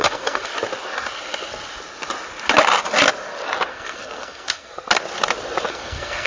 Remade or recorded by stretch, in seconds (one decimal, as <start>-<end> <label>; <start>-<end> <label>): 0.0-0.5 remade; 0.5-3.7 recorded; 3.7-4.7 remade; 4.7-5.7 recorded; 5.7-6.3 remade